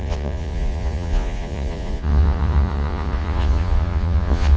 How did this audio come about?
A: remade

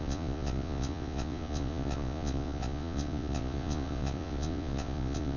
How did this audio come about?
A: remade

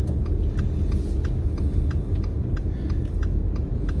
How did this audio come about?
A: recorded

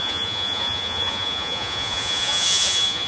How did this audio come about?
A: remade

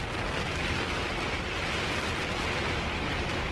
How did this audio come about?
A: recorded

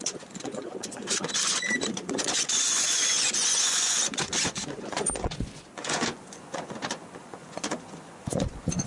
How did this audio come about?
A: remade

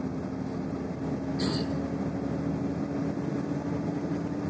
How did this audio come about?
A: recorded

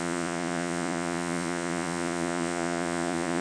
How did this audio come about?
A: remade